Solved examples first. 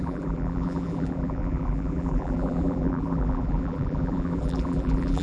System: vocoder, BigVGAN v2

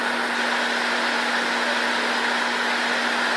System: none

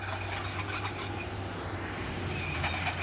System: none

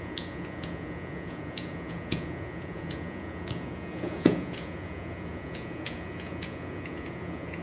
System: vocoder, Vocos